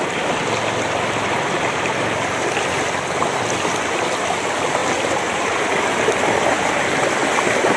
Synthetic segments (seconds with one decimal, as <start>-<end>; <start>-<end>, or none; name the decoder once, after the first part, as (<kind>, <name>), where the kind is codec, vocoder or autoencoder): none